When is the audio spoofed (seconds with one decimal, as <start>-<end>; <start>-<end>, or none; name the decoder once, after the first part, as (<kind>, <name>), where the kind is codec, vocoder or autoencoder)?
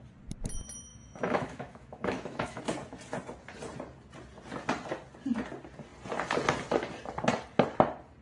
0.9-2.6 (autoencoder, DAC-VAE)